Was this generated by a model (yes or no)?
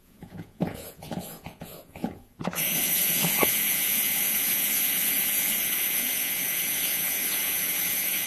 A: yes